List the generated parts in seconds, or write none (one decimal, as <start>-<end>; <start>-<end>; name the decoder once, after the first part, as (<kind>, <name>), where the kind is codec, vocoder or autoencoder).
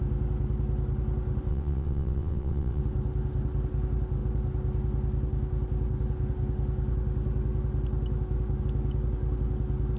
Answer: 1.5-2.8 (vocoder, WaveNeXt)